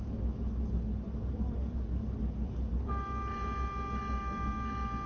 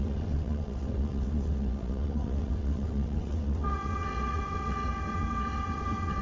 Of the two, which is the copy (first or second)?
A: second